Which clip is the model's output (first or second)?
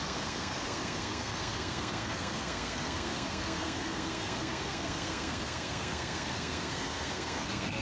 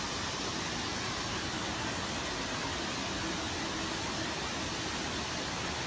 first